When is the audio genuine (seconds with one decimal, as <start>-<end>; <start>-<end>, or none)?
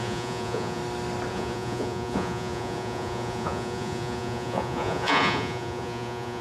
0.8-1.3